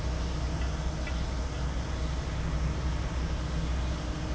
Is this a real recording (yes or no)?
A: yes